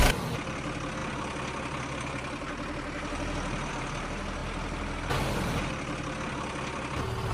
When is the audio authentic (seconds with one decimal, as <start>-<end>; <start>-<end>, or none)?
0.0-7.3